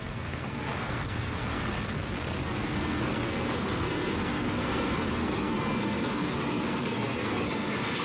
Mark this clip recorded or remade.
remade